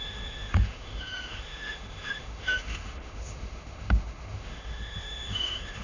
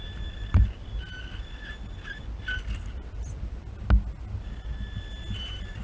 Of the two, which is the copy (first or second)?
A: first